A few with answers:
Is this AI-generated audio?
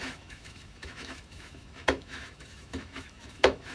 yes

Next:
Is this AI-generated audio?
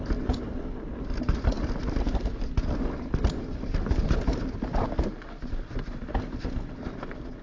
no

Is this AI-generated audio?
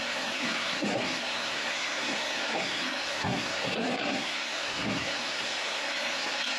yes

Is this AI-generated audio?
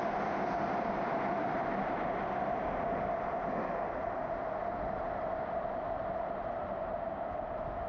no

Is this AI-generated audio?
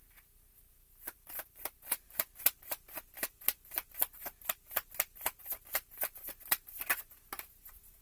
yes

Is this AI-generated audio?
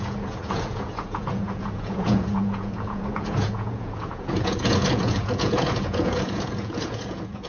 yes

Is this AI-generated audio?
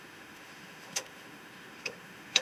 yes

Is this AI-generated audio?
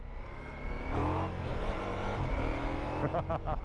no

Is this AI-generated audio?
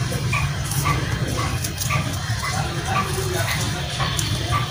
no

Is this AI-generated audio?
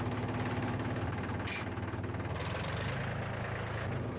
no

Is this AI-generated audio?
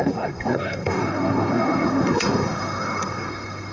yes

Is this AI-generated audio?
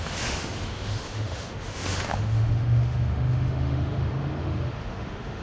yes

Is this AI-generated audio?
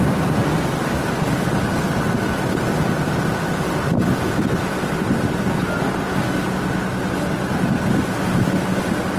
no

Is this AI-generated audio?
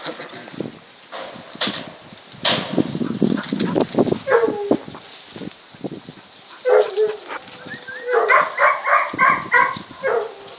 no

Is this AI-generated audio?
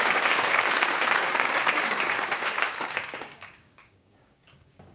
yes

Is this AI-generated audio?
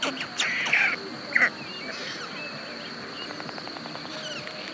no